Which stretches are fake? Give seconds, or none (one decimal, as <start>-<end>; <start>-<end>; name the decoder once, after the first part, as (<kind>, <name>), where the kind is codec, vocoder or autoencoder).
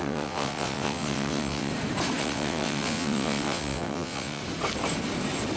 0.0-1.7 (vocoder, WaveNeXt); 2.2-4.4